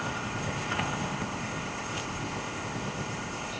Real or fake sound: fake